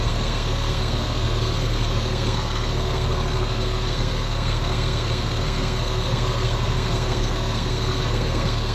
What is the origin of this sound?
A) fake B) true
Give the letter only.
A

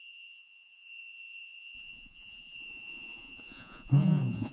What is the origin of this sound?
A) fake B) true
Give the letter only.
A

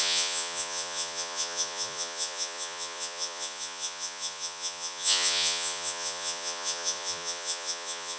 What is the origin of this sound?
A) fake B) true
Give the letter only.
A